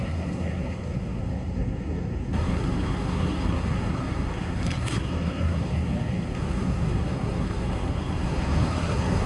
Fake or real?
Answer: fake